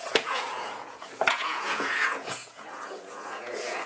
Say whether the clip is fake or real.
fake